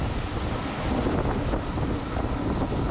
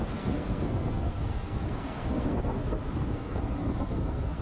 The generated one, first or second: second